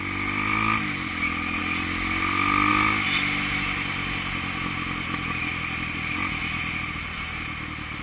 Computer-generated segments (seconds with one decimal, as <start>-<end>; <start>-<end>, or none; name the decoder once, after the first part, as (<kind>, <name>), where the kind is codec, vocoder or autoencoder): none